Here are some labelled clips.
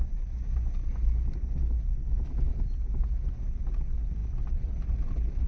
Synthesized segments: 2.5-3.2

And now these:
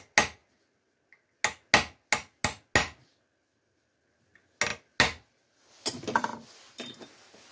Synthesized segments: 6.3-7.0